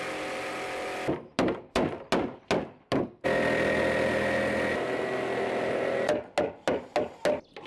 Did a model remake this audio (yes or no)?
no